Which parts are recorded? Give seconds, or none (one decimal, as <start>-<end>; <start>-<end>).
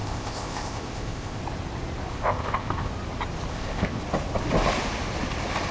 1.4-2.1; 2.9-3.5; 4.0-5.7